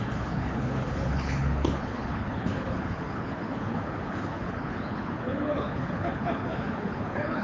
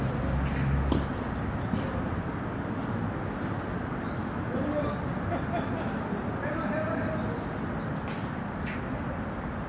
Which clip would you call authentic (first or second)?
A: second